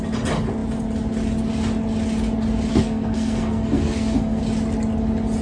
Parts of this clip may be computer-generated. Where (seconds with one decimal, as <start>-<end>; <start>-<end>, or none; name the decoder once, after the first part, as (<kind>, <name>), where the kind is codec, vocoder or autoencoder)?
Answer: 2.7-4.4 (codec, SNAC)